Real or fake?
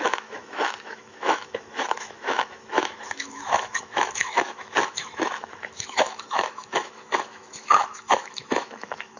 fake